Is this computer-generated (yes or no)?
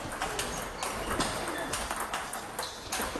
no